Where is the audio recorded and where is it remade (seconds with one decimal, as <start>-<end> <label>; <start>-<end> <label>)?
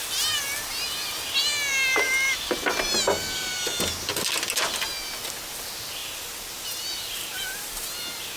0.0-6.0 recorded; 6.0-7.7 remade; 7.7-8.4 recorded